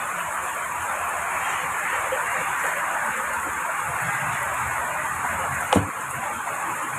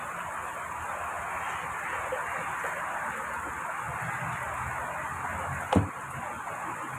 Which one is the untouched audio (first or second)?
second